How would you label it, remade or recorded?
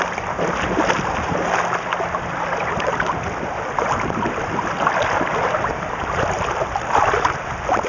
recorded